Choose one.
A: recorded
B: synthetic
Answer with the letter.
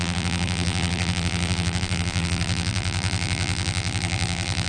B